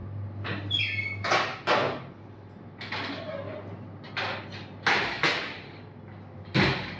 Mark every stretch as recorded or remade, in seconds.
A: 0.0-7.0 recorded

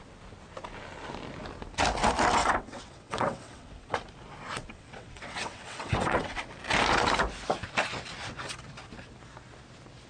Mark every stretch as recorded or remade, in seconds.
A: 0.0-2.4 recorded; 2.4-4.0 remade; 4.0-4.6 recorded; 4.6-6.4 remade; 6.4-10.1 recorded